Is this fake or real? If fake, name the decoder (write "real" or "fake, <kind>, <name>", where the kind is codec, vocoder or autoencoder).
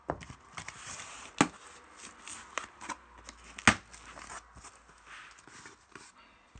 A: real